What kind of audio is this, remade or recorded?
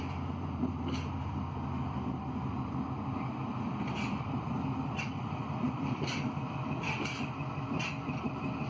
remade